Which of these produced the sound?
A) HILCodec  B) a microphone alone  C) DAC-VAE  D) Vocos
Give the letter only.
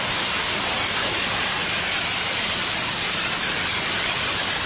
B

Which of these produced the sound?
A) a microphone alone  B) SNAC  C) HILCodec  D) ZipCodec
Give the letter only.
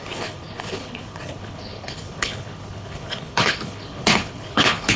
C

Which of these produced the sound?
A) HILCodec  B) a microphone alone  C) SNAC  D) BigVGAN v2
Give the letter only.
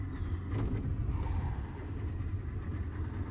B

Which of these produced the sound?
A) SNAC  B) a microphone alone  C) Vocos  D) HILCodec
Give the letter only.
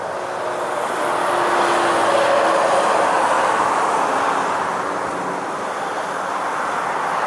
B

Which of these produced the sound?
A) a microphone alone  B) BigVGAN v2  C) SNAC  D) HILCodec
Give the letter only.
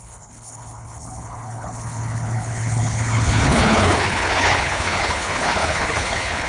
D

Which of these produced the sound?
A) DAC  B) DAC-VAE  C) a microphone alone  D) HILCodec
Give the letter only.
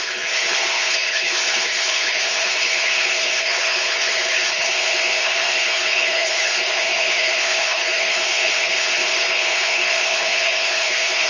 D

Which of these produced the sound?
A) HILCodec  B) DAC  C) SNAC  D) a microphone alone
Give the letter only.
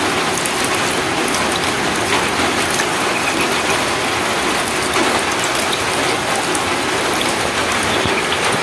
D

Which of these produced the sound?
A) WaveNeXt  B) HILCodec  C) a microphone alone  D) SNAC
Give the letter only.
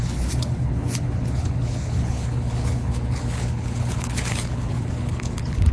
B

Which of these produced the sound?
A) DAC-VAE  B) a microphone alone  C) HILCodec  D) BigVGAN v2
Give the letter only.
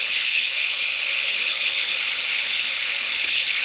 C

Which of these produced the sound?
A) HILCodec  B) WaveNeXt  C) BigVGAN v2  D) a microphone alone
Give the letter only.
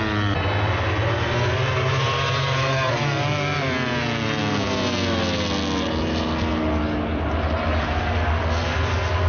D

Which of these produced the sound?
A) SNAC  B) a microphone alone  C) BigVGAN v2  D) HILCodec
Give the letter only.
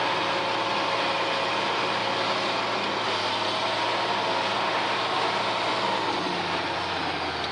B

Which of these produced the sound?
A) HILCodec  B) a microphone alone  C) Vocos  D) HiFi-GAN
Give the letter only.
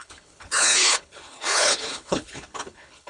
A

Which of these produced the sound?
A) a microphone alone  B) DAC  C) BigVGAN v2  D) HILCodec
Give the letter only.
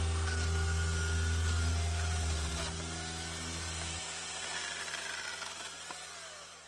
A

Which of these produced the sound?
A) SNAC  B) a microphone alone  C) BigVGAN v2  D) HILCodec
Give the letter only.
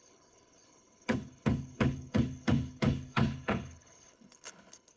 D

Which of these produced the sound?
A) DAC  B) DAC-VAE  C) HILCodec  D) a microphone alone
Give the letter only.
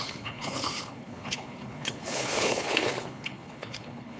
C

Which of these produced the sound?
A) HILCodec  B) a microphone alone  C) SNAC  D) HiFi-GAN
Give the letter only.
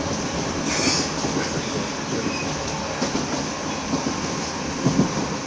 B